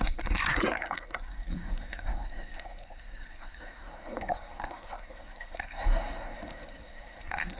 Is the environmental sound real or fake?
fake